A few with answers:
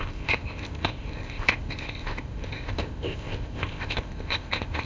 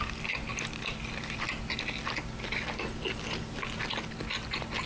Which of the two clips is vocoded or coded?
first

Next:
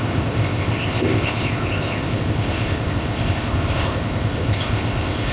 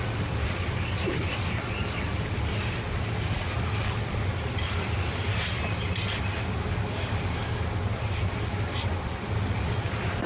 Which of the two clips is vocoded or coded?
first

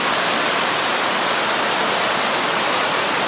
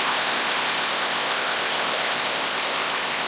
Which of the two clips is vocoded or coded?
second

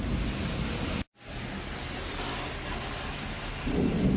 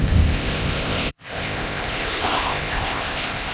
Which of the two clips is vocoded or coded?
second